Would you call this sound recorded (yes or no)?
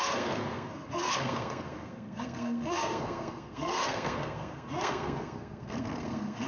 no